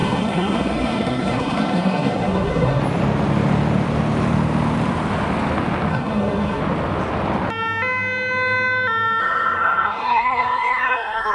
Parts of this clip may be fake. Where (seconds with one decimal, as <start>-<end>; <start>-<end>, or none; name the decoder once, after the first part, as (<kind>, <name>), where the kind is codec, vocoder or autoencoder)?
0.0-2.8 (codec, SNAC); 5.9-6.6; 9.2-11.3